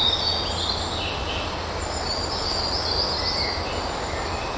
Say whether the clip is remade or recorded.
recorded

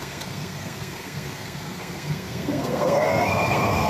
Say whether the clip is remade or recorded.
remade